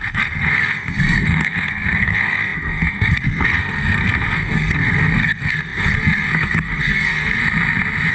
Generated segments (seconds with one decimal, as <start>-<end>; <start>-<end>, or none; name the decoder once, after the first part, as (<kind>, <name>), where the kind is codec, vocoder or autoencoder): 0.0-7.4 (codec, SNAC)